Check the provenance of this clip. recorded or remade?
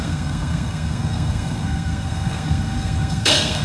remade